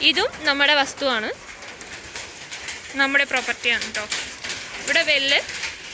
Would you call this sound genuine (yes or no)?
yes